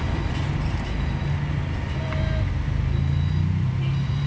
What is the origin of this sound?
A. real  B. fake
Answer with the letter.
A